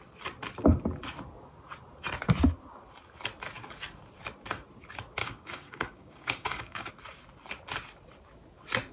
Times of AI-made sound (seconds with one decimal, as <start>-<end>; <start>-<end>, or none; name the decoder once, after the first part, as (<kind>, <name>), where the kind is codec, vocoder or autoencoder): 5.2-6.9 (codec, DAC)